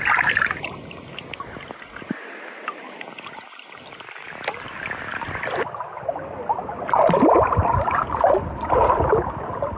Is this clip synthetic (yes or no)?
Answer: no